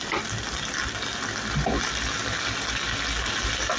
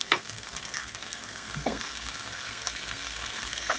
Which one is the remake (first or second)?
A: second